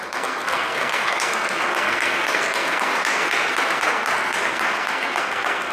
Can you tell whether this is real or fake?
fake